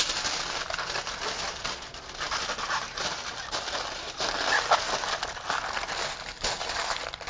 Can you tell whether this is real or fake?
real